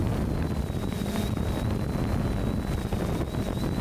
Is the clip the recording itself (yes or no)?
yes